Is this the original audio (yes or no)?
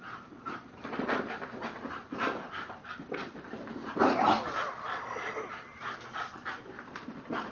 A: no